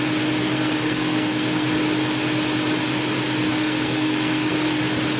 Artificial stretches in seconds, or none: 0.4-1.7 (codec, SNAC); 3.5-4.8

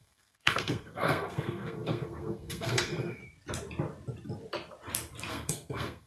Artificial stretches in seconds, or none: 0.0-3.2 (codec, SNAC); 5.3-6.1

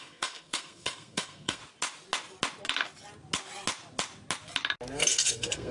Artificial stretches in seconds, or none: 0.0-1.6 (codec, SNAC); 5.0-5.7

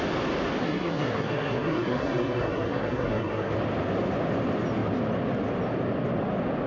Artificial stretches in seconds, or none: 0.6-3.5 (codec, SNAC)

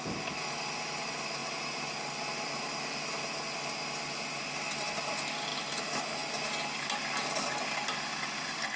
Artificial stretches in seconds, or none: none

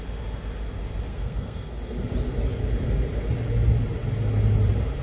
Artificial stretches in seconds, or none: 1.1-1.7 (codec, SNAC)

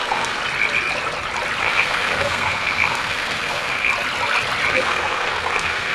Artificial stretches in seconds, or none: 0.0-0.4 (codec, SNAC); 1.6-3.9; 4.7-5.9